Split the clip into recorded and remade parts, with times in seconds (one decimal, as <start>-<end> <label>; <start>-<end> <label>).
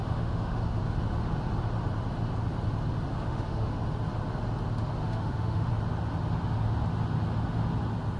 0.0-0.8 remade; 0.8-3.1 recorded; 3.1-3.7 remade; 3.7-5.0 recorded; 5.0-5.7 remade; 5.7-8.2 recorded